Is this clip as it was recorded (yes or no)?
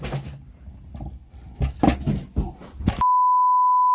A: yes